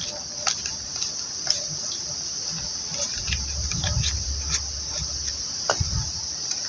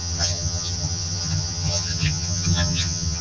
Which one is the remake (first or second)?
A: second